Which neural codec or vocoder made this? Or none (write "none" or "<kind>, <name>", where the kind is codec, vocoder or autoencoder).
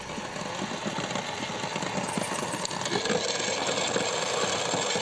none